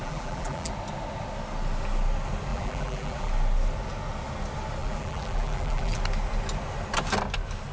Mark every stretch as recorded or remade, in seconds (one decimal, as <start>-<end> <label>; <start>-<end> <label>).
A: 0.0-0.7 remade; 0.7-2.5 recorded; 2.5-3.3 remade; 3.3-4.8 recorded; 4.8-6.0 remade; 6.0-7.7 recorded